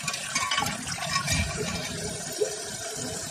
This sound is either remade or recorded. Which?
recorded